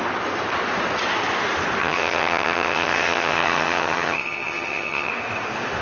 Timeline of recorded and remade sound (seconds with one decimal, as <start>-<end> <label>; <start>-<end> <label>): 0.0-1.8 recorded; 1.8-5.1 remade; 5.1-5.8 recorded